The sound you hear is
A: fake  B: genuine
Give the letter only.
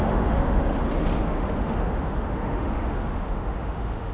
A